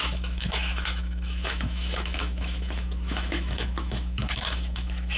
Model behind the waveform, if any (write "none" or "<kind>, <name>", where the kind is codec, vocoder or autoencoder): autoencoder, DAC-VAE